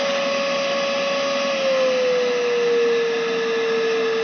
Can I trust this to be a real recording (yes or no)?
yes